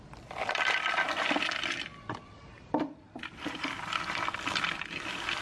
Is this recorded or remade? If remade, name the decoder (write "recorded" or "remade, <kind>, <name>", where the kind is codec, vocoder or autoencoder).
recorded